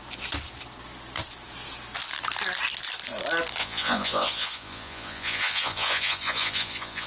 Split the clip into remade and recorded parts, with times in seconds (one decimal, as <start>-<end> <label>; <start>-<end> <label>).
0.0-3.6 recorded; 3.6-7.1 remade